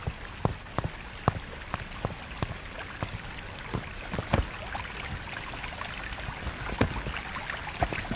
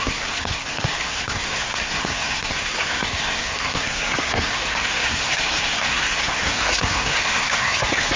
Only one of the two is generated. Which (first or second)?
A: second